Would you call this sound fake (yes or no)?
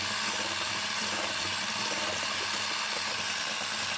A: no